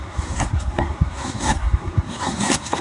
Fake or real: fake